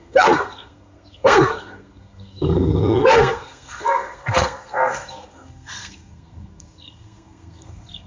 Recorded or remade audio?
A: remade